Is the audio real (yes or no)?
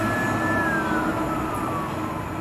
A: yes